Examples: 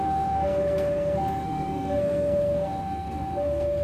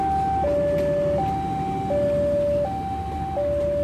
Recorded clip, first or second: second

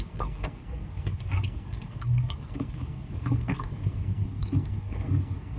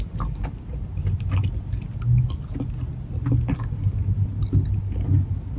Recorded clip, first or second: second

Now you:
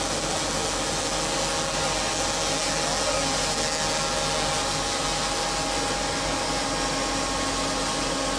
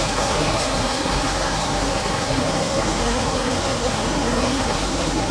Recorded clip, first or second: first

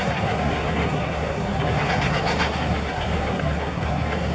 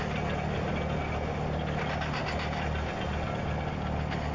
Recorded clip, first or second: second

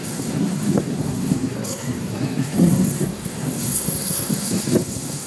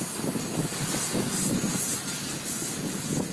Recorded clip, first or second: second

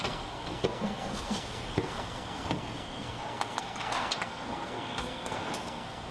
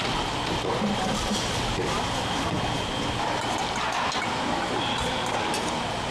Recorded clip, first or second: second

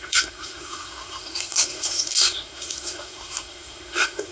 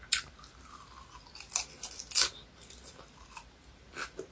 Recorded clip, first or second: second